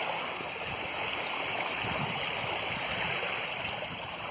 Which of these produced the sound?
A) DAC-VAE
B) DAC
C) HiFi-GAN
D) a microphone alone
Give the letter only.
D